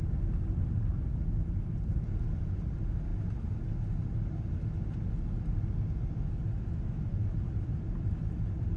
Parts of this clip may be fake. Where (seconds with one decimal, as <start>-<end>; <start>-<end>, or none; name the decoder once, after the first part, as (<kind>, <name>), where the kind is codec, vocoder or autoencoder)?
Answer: 0.0-0.9 (vocoder, BigVGAN v2); 1.9-3.1; 7.0-8.8